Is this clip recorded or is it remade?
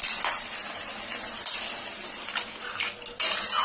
recorded